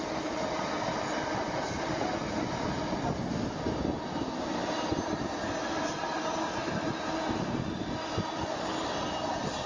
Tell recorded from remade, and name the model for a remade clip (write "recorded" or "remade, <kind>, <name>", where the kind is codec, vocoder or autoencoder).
recorded